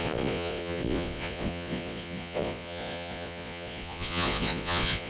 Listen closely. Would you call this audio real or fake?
fake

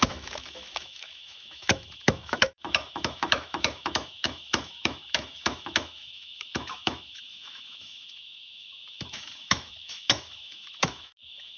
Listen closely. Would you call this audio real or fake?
fake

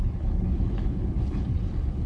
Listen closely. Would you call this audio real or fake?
fake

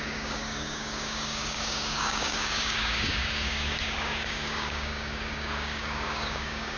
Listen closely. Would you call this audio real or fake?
fake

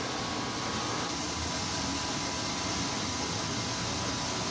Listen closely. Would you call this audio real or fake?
real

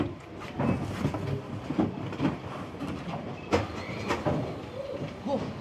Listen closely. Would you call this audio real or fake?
real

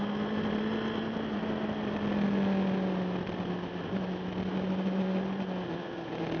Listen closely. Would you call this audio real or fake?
real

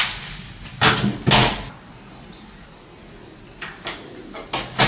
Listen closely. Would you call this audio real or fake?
real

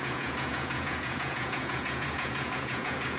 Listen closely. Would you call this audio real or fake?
fake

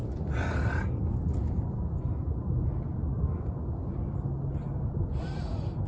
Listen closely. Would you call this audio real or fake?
real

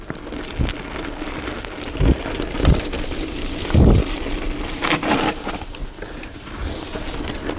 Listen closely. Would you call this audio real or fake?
real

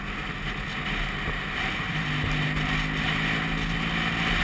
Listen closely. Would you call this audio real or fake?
real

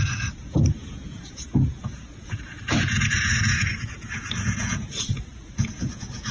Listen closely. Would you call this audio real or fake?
fake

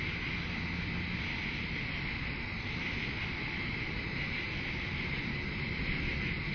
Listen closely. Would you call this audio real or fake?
real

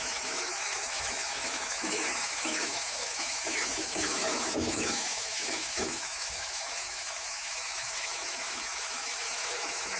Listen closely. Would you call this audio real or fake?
fake